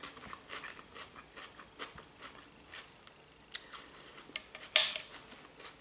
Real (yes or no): yes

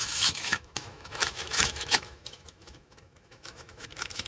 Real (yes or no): no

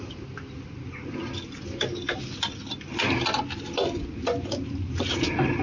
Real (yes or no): yes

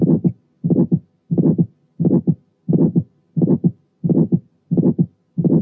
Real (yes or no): yes